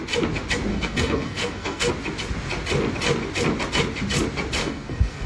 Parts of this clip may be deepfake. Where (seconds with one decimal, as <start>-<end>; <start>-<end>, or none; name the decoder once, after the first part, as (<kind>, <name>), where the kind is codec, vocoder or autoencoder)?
0.7-1.9 (codec, SNAC); 4.6-5.3

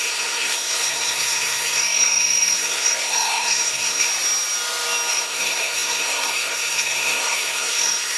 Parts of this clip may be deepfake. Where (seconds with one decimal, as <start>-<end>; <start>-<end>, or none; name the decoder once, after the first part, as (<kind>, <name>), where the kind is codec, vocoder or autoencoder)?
0.0-4.1 (codec, SNAC); 5.1-8.2

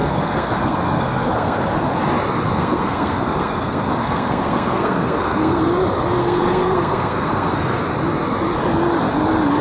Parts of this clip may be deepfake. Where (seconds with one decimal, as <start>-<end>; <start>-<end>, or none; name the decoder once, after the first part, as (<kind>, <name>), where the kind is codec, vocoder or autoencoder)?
0.0-1.9 (codec, SNAC); 2.5-5.7; 6.2-7.8

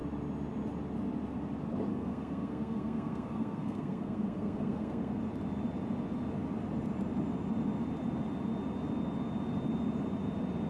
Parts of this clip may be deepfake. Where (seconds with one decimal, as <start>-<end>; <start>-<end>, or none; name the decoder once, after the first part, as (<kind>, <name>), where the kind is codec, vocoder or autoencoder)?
1.9-5.2 (codec, SNAC)

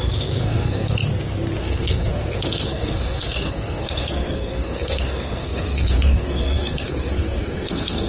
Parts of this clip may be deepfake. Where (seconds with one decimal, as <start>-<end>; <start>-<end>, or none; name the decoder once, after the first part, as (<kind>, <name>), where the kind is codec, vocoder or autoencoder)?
0.0-1.0 (codec, SNAC); 1.6-8.1

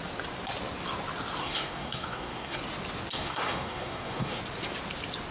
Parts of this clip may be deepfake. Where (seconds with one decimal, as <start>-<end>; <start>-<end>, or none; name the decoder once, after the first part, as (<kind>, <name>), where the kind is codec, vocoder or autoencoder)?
1.4-2.6 (codec, SNAC); 3.1-4.4

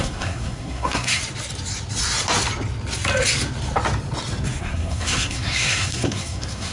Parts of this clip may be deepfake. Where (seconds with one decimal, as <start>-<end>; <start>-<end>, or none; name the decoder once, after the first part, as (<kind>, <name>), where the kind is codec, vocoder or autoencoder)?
0.0-1.2 (codec, SNAC); 4.6-6.7